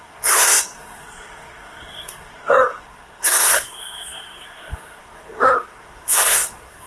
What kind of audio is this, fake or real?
fake